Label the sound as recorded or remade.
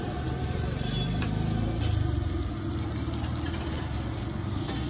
recorded